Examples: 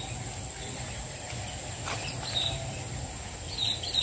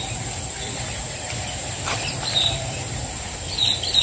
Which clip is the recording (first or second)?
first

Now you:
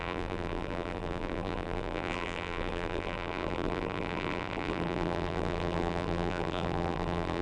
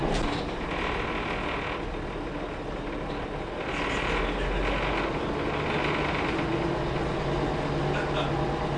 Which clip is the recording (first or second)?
second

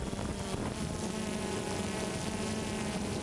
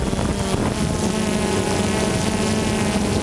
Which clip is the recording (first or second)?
second